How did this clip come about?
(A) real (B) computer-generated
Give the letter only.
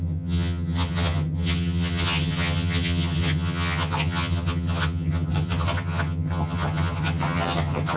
B